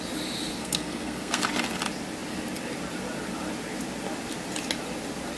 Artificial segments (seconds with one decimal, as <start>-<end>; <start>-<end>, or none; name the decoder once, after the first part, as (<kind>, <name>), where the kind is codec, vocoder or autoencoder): 0.6-1.4 (codec, SNAC)